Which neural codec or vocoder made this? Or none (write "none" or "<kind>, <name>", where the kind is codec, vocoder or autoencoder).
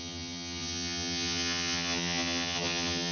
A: vocoder, HiFi-GAN